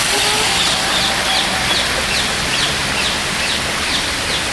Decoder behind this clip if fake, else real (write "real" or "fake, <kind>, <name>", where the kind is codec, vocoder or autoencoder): real